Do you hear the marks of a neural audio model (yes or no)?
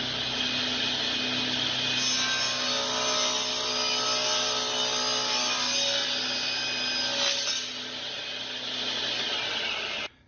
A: no